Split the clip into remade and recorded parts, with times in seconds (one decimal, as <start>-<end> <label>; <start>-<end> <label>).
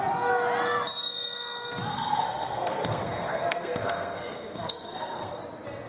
0.0-1.9 recorded; 1.9-5.4 remade; 5.4-5.9 recorded